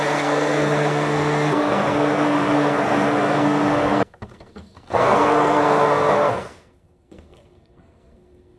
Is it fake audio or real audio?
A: fake